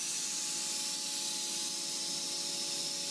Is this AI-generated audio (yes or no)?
no